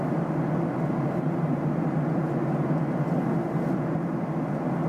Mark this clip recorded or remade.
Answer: recorded